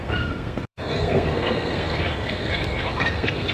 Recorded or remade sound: remade